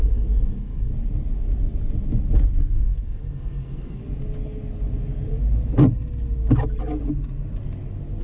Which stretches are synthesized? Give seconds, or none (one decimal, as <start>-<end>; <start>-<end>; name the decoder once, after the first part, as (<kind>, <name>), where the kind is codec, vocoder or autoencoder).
0.0-0.9 (codec, SNAC); 2.6-4.0